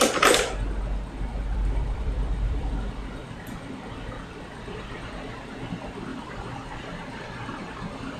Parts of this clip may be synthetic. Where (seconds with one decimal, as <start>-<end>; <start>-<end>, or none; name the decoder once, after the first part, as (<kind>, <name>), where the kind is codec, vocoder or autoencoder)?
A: 1.3-3.8 (vocoder, BigVGAN v2); 6.1-6.9